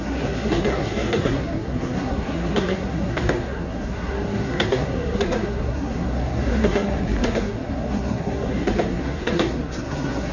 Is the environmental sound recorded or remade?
remade